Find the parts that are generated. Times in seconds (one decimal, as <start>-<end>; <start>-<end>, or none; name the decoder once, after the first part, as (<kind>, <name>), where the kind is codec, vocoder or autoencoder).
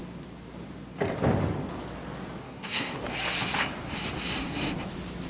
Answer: 2.4-3.0 (codec, SNAC)